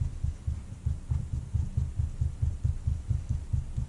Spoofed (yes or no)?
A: no